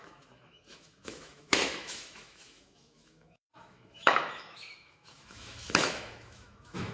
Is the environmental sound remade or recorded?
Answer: remade